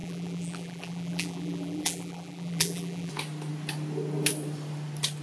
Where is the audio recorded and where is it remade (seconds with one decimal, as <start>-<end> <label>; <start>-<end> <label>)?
0.0-3.1 remade; 3.1-5.2 recorded

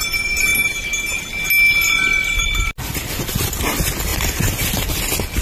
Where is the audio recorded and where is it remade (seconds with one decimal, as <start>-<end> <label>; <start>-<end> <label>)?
0.0-2.1 recorded; 2.1-3.6 remade; 3.6-4.1 recorded; 4.1-4.7 remade; 4.7-5.4 recorded

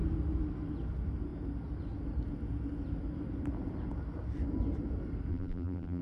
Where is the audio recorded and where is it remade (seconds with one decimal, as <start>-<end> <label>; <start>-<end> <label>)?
0.0-5.3 recorded; 5.3-6.0 remade

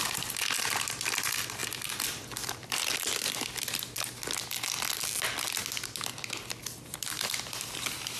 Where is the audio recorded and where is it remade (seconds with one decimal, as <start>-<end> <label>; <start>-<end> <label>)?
0.0-2.6 remade; 2.6-6.6 recorded; 6.6-8.2 remade